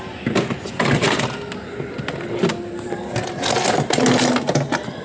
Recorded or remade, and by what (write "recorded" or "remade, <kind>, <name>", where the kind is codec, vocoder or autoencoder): recorded